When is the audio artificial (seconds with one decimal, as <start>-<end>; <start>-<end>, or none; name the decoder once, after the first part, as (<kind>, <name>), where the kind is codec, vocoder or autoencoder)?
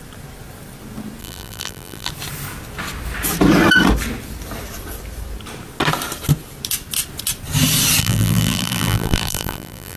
1.2-2.1 (vocoder, BigVGAN v2); 8.0-10.0